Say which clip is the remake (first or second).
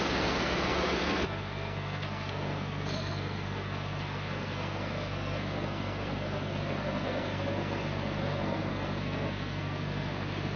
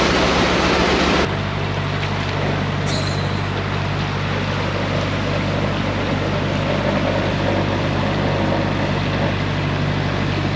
first